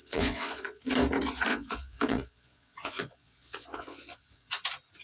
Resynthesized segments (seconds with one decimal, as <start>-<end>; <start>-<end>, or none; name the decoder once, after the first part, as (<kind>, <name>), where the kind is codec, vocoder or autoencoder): 0.0-0.9 (vocoder, Vocos); 1.5-4.5